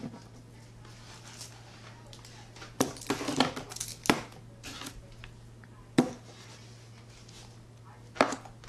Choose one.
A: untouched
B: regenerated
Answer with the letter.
A